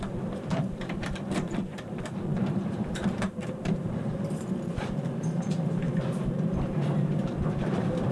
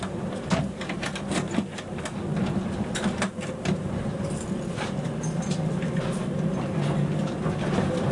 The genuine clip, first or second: second